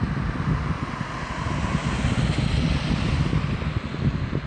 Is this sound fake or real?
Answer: real